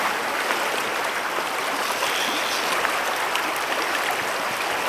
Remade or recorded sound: remade